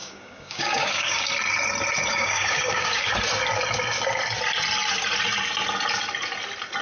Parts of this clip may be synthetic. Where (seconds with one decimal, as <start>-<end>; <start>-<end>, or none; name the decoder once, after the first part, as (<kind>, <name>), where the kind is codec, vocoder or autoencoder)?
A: 0.0-1.3 (codec, DAC); 2.1-3.1